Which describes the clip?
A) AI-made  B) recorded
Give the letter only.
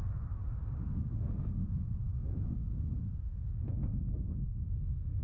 A